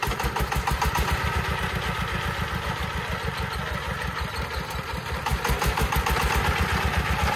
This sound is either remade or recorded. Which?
recorded